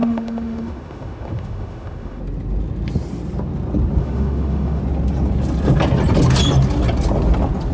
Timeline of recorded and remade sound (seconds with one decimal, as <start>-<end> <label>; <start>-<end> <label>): 0.0-2.2 remade; 2.2-4.0 recorded; 4.0-4.8 remade; 4.8-7.7 recorded